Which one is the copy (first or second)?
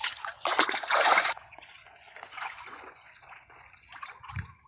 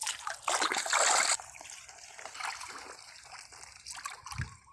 first